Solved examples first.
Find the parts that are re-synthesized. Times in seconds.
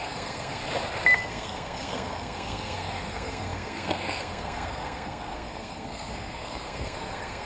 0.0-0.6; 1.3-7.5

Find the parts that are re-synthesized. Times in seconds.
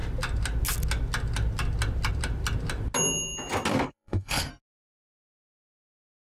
3.7-4.5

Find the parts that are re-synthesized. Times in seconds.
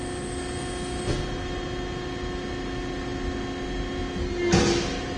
none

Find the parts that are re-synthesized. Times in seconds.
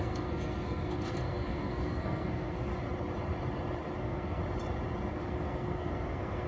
0.0-2.7; 4.0-4.4; 5.1-6.5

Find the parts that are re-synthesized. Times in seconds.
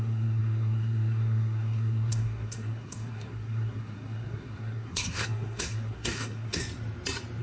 0.0-6.6